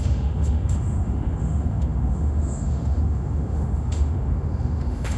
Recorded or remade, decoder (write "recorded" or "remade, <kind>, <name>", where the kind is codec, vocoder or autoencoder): remade, autoencoder, DAC-VAE